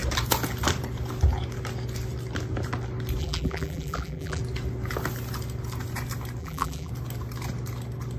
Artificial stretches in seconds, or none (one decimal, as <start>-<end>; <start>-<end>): 3.2-4.4; 6.4-6.9